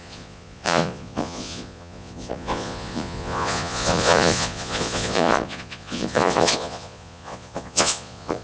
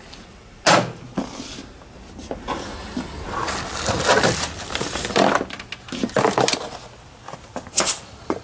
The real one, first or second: second